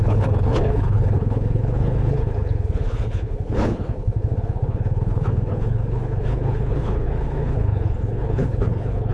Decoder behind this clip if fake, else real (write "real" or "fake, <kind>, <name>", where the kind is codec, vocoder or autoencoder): fake, codec, HILCodec